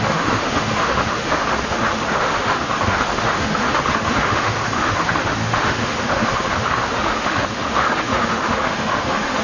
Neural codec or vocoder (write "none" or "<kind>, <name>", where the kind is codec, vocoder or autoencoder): autoencoder, DAC-VAE